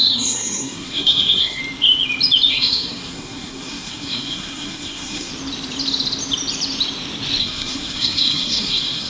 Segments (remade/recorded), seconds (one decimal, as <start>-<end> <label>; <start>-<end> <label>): 0.0-1.6 remade; 1.6-2.5 recorded; 2.5-5.3 remade; 5.3-7.4 recorded; 7.4-9.1 remade